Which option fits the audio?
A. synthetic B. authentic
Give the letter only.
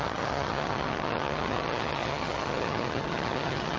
A